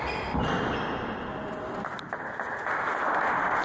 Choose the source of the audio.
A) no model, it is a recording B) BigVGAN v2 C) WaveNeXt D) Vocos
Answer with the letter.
A